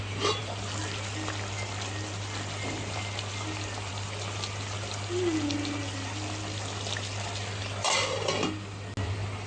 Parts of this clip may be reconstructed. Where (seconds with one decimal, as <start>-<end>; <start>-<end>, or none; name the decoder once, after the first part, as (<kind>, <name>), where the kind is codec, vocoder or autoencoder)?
none